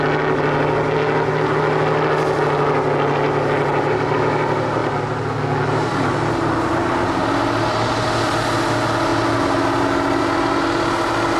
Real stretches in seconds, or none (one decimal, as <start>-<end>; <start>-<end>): 0.0-11.4